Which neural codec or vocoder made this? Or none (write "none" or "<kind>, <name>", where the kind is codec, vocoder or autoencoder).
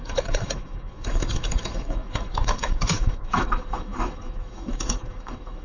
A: autoencoder, DAC-VAE